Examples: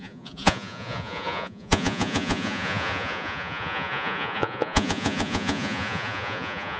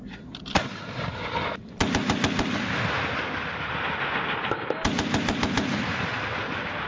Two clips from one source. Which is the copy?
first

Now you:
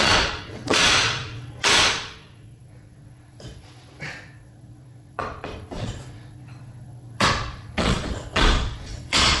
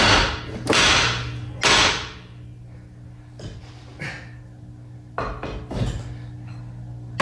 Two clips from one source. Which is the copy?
first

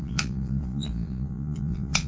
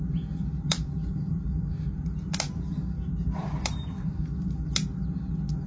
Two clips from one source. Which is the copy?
first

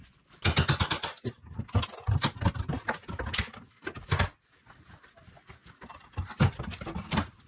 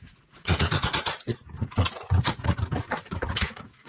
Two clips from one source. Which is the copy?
second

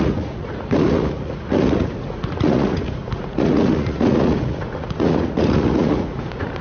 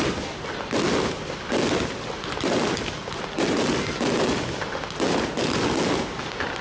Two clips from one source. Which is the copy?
first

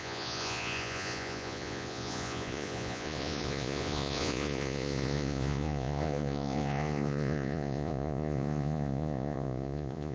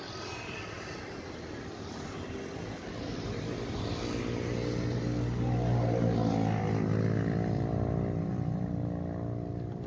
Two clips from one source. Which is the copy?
first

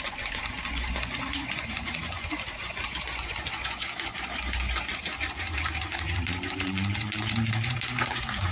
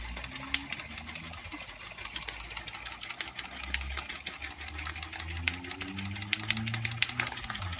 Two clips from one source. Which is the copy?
first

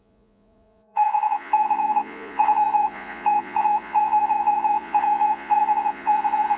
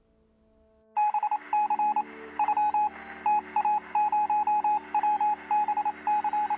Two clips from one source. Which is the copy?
first